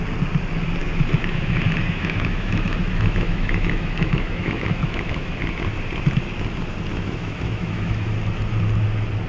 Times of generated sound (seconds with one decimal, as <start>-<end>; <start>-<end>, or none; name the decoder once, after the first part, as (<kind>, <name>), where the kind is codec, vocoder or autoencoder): 0.8-5.3 (autoencoder, DAC-VAE); 6.9-8.1